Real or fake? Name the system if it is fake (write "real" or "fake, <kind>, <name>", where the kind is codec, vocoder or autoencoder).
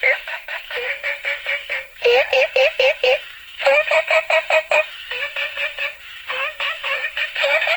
fake, autoencoder, DAC-VAE